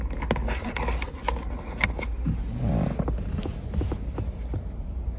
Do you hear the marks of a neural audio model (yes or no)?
no